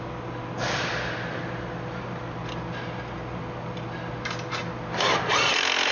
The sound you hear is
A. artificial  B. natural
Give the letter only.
B